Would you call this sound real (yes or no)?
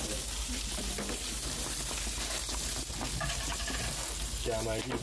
yes